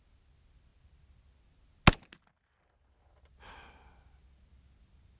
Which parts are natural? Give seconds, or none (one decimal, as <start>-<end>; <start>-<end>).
0.0-5.2